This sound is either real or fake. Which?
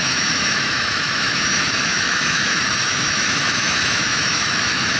fake